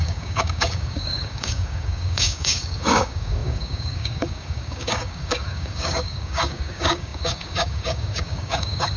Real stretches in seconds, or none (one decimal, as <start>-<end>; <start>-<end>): none